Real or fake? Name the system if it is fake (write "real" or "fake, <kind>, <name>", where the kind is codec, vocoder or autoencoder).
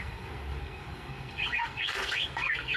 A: fake, codec, SNAC